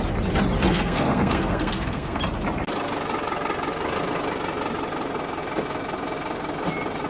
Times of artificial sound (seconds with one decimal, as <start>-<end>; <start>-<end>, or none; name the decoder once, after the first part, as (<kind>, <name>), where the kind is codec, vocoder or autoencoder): 0.7-2.2 (codec, SNAC)